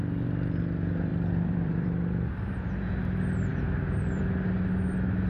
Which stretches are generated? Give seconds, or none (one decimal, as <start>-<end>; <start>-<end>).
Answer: 1.1-2.3; 3.5-4.2